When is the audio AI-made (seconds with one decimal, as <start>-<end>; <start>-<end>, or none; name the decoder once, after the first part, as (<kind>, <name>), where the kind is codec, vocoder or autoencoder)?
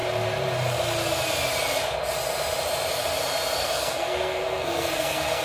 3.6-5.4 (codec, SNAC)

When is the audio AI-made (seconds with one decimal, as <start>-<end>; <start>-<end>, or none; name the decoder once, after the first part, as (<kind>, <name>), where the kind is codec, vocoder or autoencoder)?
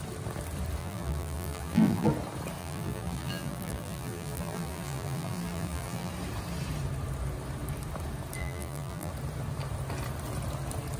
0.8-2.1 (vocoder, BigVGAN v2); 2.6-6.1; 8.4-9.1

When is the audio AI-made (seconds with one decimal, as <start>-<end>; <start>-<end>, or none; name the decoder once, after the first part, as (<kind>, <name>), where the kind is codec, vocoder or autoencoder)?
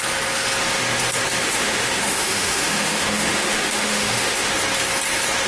1.4-4.5 (autoencoder, DAC-VAE)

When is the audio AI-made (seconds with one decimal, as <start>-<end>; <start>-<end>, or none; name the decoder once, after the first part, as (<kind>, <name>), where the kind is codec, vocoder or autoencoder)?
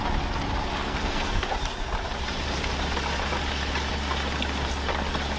0.8-1.5 (codec, SNAC)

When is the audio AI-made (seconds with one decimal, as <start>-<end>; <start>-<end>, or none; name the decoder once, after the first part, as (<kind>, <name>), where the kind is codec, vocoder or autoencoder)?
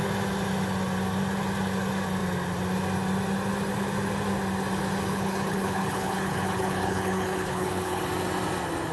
5.1-8.0 (codec, HILCodec)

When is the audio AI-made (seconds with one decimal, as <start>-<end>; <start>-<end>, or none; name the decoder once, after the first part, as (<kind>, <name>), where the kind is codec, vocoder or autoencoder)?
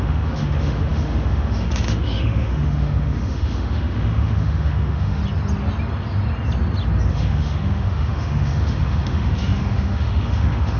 0.0-5.2 (autoencoder, DAC-VAE); 7.1-10.8